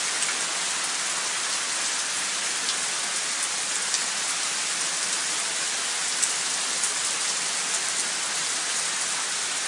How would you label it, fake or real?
real